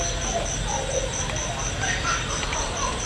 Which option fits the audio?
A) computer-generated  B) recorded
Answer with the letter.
B